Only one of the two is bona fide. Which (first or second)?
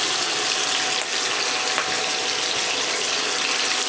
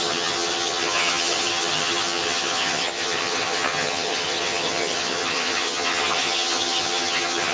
first